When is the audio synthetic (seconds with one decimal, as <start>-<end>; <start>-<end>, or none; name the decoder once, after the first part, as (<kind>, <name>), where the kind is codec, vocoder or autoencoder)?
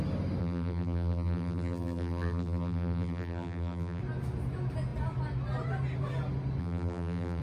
0.4-4.0 (vocoder, BigVGAN v2); 6.6-7.4